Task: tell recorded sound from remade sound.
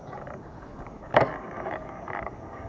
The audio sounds remade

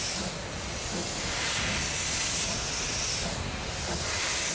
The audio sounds recorded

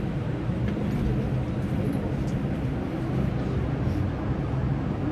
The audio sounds recorded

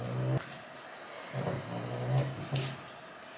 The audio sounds recorded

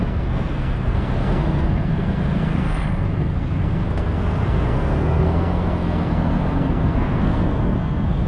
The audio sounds remade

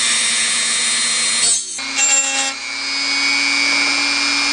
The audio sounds recorded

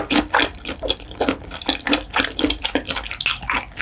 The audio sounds recorded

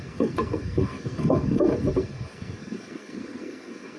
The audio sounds remade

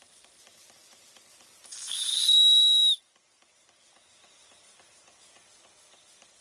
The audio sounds recorded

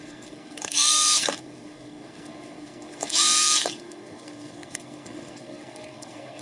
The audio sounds remade